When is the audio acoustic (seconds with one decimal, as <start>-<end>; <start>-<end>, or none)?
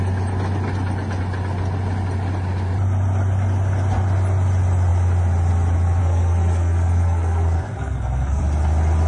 0.0-6.0; 8.4-9.1